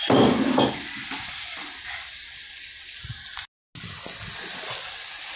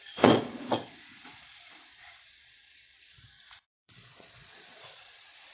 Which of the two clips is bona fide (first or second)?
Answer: first